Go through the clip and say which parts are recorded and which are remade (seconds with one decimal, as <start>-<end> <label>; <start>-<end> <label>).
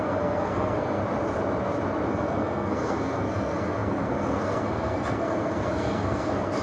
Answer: 0.0-1.0 remade; 1.0-2.1 recorded; 2.1-6.6 remade